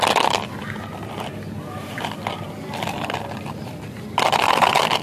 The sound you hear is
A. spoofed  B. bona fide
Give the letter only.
B